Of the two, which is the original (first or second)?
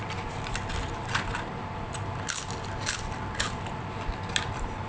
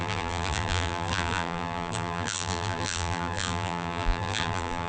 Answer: first